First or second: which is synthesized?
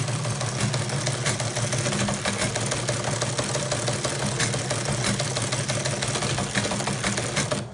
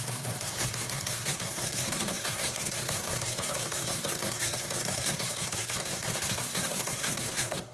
second